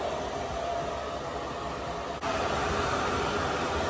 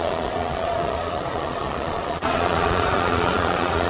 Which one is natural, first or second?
first